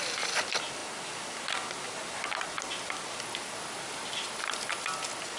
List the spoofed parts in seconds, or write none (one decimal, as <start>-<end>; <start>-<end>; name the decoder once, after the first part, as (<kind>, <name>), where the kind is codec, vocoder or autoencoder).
none